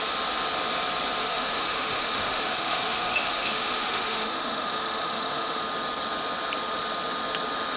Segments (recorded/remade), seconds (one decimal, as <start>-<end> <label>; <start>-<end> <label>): 0.0-1.3 recorded; 1.3-5.6 remade; 5.6-7.8 recorded